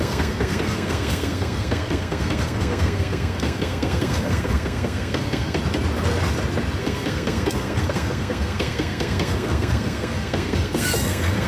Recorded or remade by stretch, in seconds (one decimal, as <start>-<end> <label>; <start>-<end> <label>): 0.0-5.6 remade; 5.6-6.8 recorded; 6.8-11.5 remade